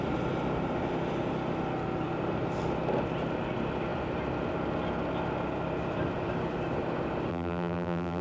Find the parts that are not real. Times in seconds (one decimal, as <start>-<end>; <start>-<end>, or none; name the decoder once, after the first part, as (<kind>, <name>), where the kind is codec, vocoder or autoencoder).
7.3-8.2 (vocoder, BigVGAN v2)